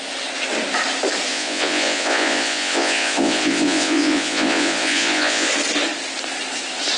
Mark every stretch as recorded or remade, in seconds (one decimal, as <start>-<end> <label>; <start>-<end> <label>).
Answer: 0.0-1.3 recorded; 1.3-5.5 remade; 5.5-7.0 recorded